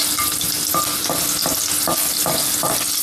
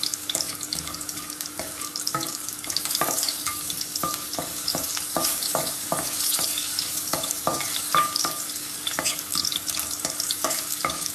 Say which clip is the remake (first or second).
second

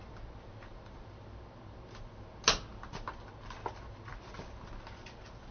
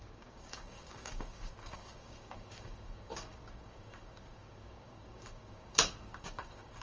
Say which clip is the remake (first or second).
second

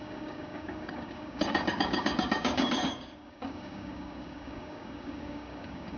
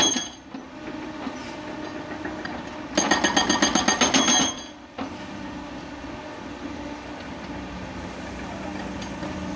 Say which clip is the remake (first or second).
first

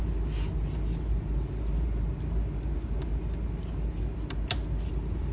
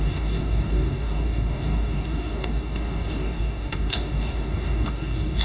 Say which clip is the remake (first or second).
second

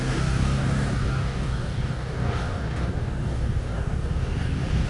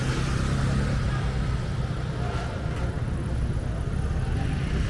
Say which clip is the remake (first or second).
first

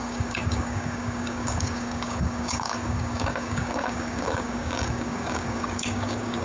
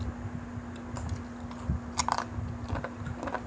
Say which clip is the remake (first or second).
first